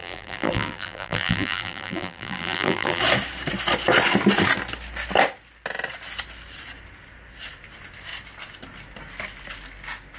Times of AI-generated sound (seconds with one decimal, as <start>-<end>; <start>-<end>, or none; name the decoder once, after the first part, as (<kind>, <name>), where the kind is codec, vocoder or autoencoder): 0.0-3.0 (vocoder, BigVGAN v2)